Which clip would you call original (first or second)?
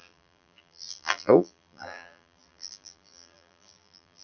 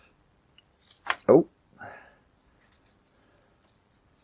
second